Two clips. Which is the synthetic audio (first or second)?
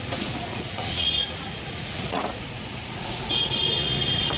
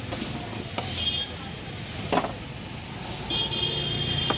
first